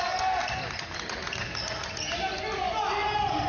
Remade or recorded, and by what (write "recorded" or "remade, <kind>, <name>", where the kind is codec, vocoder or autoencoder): recorded